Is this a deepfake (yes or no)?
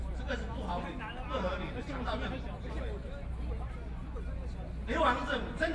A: no